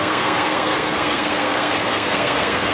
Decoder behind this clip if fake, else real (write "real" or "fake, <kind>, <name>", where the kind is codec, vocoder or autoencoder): fake, codec, SNAC